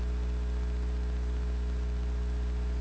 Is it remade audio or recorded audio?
recorded